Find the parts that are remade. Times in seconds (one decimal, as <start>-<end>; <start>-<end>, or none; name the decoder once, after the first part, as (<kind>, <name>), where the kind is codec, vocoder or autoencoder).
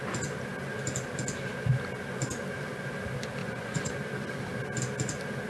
3.4-3.9 (vocoder, Vocos)